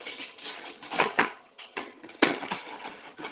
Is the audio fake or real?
fake